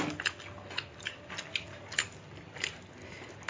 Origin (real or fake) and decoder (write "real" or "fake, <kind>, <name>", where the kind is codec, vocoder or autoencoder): real